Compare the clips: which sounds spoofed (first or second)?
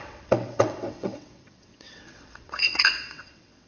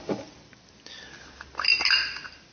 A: first